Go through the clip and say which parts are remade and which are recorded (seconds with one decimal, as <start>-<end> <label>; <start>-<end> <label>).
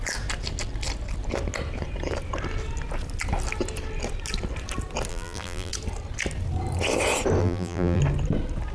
0.0-5.1 recorded; 5.1-5.7 remade; 5.7-7.4 recorded; 7.4-8.0 remade; 8.0-8.7 recorded